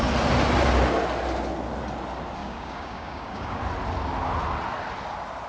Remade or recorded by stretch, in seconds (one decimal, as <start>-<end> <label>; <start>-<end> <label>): 0.0-2.4 recorded; 2.4-3.6 remade; 3.6-5.5 recorded